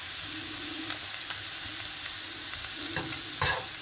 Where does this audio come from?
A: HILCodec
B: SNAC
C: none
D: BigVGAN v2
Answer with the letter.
C